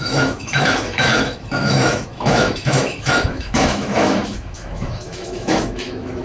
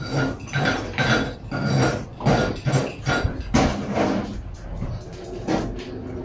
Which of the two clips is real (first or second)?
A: second